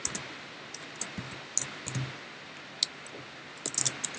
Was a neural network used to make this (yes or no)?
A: no